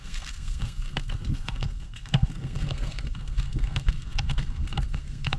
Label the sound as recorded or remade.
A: remade